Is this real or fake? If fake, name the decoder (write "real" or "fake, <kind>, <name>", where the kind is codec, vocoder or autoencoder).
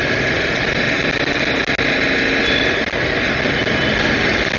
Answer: real